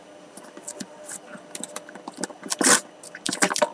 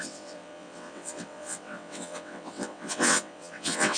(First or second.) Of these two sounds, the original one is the first